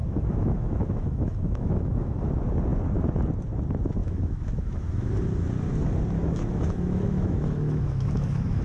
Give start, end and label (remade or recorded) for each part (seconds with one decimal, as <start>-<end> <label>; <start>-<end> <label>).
0.0-2.3 remade; 2.3-4.0 recorded; 4.0-5.1 remade; 5.1-6.2 recorded; 6.2-8.6 remade